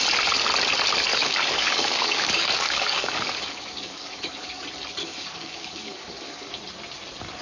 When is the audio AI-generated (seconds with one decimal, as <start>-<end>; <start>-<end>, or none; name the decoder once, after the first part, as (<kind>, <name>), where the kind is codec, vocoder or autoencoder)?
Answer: 1.1-4.6 (codec, DAC); 5.0-6.5